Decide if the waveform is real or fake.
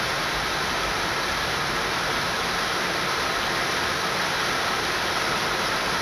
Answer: real